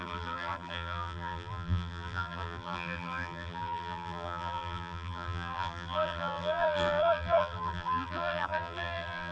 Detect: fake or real fake